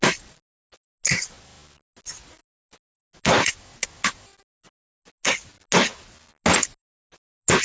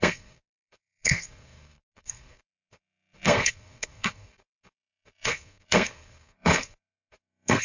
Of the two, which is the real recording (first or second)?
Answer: first